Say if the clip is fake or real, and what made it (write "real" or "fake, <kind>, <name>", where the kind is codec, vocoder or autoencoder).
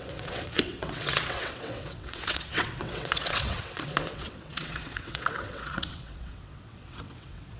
fake, vocoder, WaveNeXt